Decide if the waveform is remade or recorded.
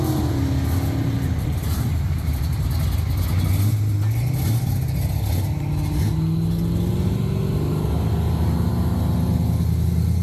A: recorded